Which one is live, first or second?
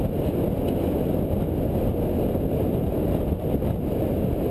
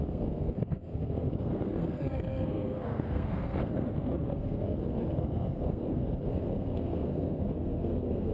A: first